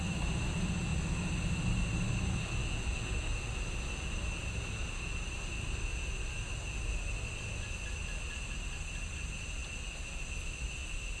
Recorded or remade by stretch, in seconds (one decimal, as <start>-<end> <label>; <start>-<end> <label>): 0.0-11.2 recorded